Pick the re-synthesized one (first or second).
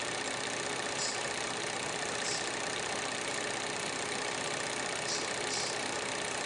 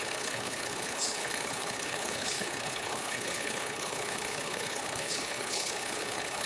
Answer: second